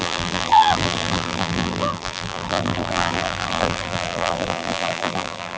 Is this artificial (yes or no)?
yes